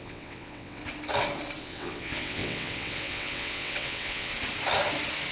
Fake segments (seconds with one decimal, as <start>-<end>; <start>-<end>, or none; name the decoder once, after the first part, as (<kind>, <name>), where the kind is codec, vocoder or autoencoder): 0.0-0.8 (vocoder, WaveNeXt); 1.6-4.3